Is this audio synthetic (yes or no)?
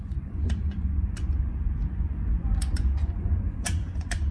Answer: yes